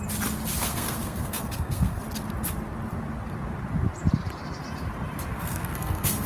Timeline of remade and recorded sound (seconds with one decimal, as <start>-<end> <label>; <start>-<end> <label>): 0.0-0.6 recorded; 0.6-2.0 remade; 2.0-5.3 recorded; 5.3-6.3 remade